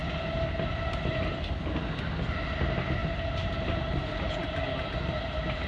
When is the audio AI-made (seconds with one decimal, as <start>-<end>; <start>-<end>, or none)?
3.0-4.0